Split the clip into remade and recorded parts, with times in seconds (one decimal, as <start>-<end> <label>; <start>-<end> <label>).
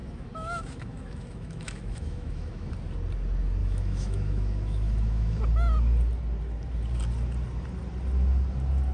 0.0-2.7 remade; 2.7-3.6 recorded; 3.6-5.4 remade; 5.4-8.9 recorded